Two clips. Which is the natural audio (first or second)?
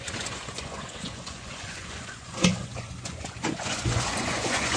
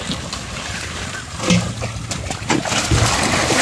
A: second